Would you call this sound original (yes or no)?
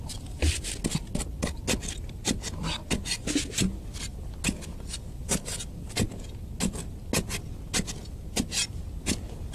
yes